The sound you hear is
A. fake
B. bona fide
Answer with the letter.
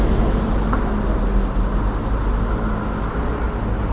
B